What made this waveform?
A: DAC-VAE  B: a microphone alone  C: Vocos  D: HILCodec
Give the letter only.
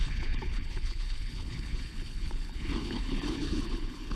D